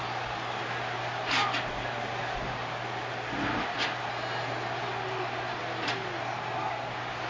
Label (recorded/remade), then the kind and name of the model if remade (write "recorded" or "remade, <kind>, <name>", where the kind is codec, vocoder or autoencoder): recorded